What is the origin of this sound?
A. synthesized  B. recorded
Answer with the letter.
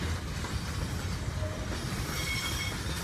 B